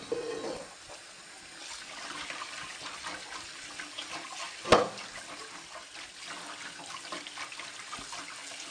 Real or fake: real